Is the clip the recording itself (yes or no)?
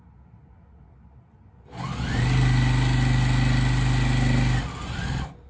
yes